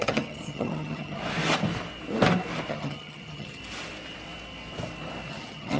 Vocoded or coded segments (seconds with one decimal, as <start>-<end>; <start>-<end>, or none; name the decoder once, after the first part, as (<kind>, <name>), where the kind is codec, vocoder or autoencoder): 0.0-1.2 (vocoder, HiFi-GAN); 2.7-3.6; 5.3-5.8